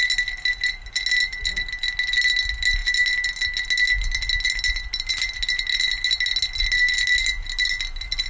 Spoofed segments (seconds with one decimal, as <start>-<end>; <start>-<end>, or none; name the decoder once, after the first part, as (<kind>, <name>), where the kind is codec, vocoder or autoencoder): none